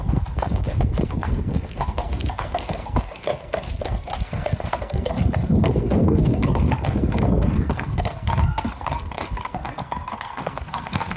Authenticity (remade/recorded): remade